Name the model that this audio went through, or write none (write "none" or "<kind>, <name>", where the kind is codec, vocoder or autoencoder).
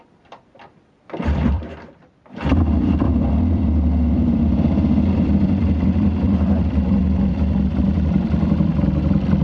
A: vocoder, BigVGAN v2